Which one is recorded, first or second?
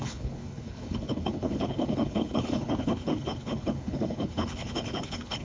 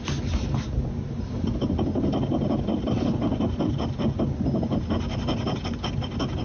second